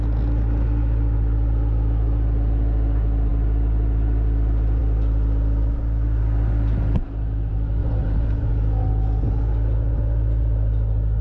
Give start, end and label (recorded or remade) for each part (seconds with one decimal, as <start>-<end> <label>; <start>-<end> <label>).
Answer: 0.0-7.8 recorded; 7.8-8.5 remade; 8.5-11.2 recorded